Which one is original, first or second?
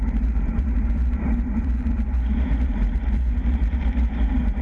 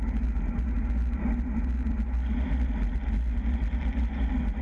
second